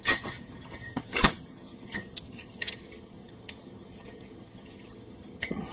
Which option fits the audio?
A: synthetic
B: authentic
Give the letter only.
A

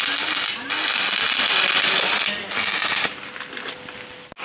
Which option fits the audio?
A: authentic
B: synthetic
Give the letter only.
A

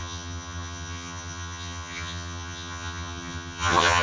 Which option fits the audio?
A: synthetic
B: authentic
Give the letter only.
A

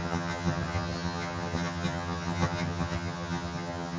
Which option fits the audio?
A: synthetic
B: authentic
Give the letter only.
A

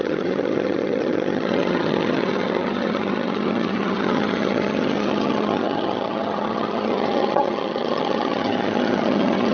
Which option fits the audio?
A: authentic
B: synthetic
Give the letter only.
B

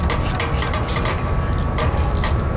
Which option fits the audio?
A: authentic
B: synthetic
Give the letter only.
A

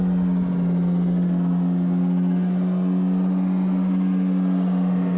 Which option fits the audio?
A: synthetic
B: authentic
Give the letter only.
B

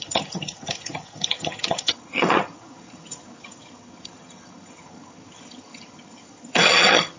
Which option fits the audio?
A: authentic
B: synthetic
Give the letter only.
B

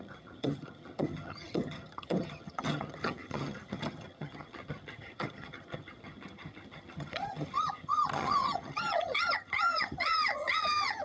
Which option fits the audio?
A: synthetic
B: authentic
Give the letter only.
A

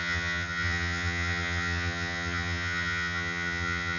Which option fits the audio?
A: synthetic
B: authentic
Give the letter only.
A